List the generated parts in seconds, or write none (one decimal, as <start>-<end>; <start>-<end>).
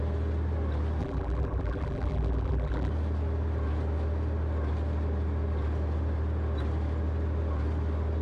1.0-2.9